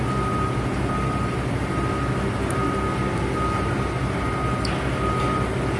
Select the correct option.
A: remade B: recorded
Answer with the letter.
B